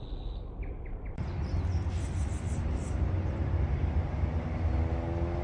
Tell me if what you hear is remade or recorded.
recorded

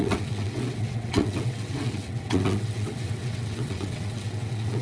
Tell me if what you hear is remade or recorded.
remade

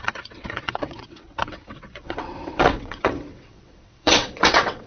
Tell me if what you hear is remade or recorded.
remade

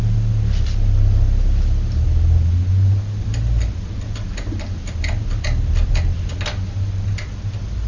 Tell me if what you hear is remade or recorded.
recorded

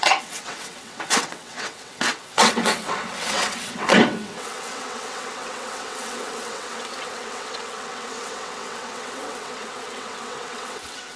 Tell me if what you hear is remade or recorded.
remade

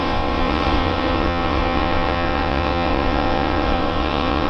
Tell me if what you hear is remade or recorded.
remade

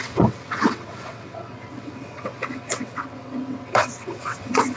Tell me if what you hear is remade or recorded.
remade